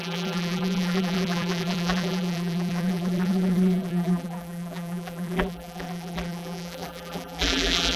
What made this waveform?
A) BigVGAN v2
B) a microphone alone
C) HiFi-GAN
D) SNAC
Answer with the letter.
A